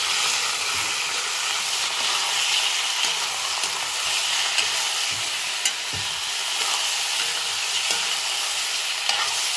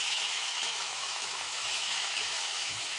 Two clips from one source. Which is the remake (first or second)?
second